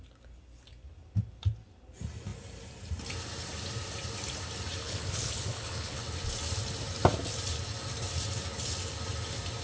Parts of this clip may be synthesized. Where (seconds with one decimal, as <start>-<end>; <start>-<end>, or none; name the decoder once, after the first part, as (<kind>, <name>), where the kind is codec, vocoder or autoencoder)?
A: 4.8-6.0 (codec, HILCodec)